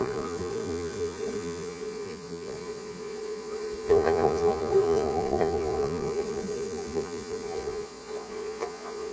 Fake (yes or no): yes